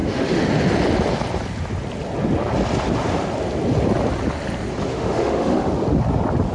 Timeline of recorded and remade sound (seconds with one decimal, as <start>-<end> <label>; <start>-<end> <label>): 0.0-0.5 remade; 0.5-4.9 recorded; 4.9-5.7 remade; 5.7-6.5 recorded